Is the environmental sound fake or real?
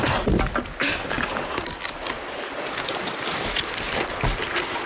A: real